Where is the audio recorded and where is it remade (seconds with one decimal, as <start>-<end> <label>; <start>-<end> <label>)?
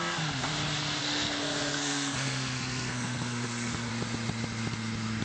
0.0-1.0 recorded; 1.0-3.9 remade; 3.9-5.2 recorded